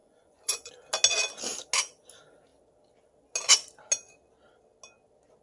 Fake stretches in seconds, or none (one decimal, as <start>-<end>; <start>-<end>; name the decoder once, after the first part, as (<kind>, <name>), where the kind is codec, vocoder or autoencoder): 0.0-0.7 (vocoder, Vocos)